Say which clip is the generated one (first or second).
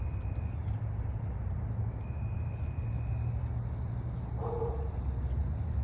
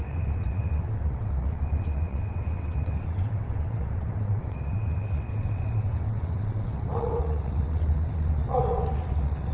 second